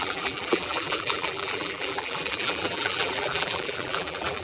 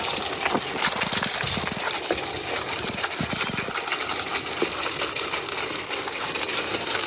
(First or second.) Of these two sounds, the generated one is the first